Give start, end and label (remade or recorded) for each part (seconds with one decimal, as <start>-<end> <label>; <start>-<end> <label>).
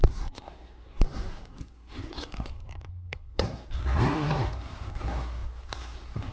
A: 0.0-6.3 remade